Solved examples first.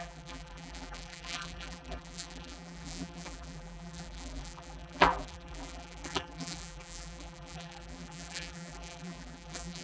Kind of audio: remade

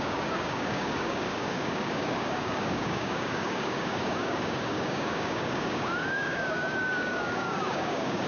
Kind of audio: remade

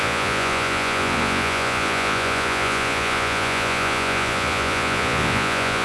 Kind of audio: remade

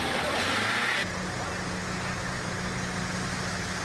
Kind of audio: recorded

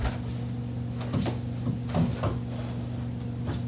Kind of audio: recorded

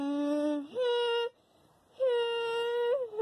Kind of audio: recorded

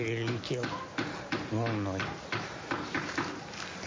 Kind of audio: recorded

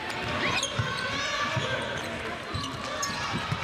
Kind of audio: recorded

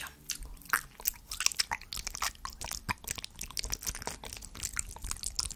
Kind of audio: recorded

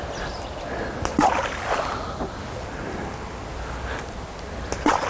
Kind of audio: recorded